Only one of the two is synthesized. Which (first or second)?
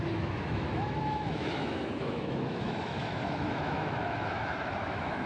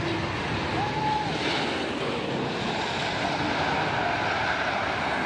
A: first